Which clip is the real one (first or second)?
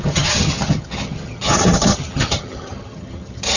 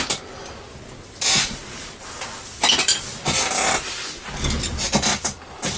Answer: second